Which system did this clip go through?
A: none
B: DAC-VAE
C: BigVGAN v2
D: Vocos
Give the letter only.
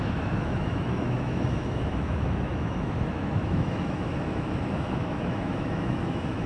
B